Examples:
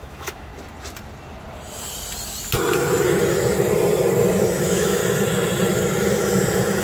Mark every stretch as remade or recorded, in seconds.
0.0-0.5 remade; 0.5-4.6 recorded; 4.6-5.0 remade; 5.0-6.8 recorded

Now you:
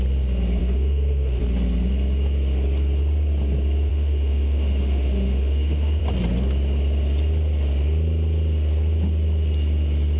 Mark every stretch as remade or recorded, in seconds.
0.0-0.6 recorded; 0.6-1.4 remade; 1.4-3.9 recorded; 3.9-6.0 remade; 6.0-10.2 recorded